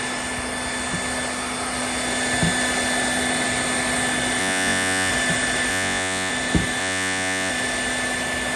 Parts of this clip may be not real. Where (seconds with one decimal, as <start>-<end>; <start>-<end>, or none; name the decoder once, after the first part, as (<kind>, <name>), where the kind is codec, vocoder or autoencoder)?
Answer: 4.4-5.1 (vocoder, Vocos); 5.7-6.3; 6.8-7.5